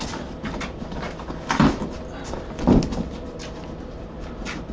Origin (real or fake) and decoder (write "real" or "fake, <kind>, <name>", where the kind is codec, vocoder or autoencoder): fake, vocoder, BigVGAN v2